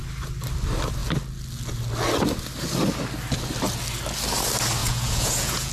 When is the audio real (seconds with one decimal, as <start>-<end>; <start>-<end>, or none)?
0.0-4.8